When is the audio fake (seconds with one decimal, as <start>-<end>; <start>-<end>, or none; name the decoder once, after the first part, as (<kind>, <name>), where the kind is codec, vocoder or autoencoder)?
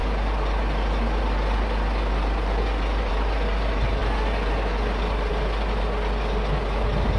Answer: none